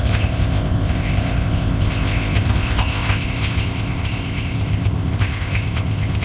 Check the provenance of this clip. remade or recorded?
remade